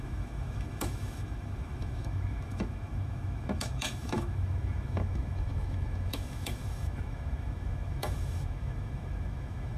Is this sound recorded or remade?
remade